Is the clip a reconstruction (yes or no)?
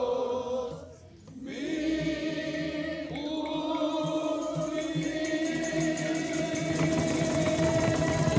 no